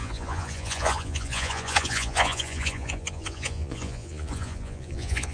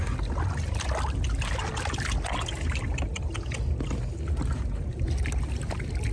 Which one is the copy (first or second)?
first